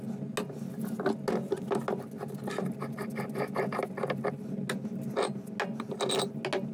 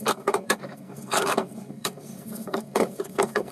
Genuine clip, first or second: first